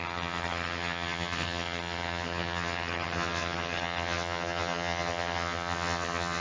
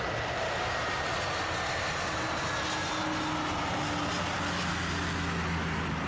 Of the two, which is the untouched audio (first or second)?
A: second